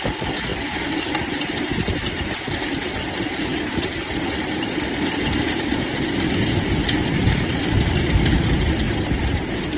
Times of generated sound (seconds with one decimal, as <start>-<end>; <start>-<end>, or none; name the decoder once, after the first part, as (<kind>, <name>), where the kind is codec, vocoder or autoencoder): none